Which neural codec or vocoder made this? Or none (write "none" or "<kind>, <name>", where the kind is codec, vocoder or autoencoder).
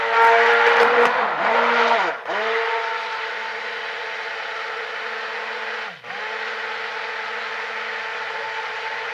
none